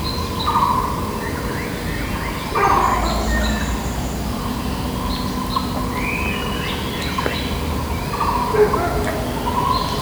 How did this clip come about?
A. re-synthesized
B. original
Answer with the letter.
B